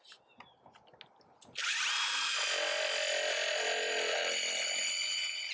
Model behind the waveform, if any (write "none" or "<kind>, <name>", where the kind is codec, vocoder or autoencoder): none